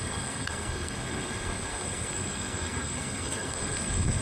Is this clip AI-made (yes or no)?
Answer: yes